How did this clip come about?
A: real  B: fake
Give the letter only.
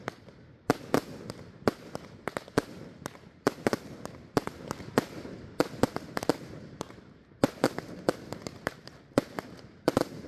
A